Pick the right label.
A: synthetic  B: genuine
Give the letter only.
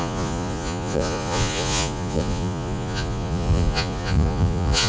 A